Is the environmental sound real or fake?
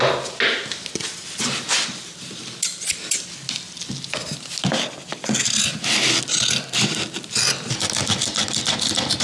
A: real